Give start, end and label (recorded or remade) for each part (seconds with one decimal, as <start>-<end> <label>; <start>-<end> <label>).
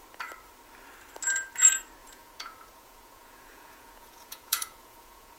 0.0-2.0 recorded; 2.0-5.4 remade